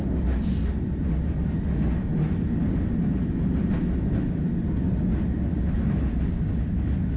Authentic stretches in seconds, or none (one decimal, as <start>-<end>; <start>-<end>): 0.0-7.2